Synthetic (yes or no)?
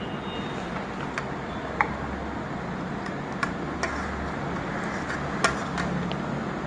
no